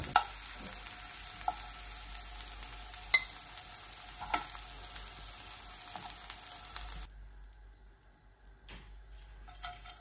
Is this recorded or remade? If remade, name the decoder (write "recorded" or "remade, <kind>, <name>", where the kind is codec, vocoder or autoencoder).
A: recorded